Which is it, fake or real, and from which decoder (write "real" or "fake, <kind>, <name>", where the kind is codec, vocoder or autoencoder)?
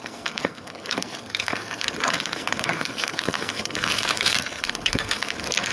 fake, codec, SNAC